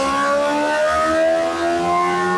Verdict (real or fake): real